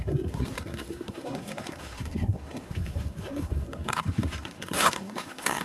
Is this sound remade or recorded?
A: remade